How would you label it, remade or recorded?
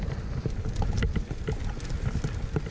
recorded